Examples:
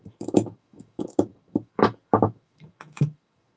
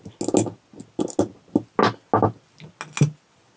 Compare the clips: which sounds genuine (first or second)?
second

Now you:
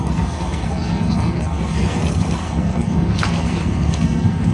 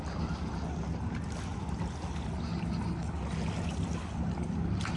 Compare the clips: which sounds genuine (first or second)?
second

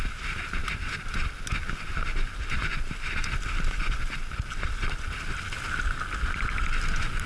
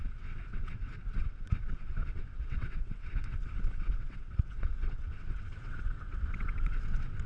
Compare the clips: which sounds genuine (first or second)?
first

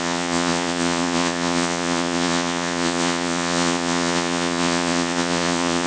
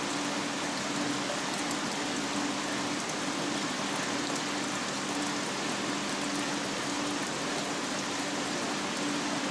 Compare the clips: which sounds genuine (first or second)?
second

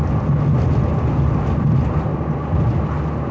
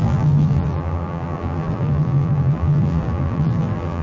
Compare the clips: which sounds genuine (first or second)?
first